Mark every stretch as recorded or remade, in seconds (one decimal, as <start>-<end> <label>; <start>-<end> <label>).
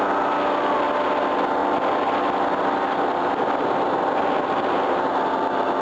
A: 0.0-5.8 recorded